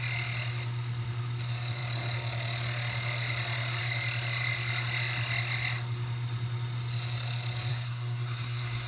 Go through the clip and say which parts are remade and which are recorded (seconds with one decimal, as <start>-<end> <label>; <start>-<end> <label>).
0.0-7.7 recorded; 7.7-8.9 remade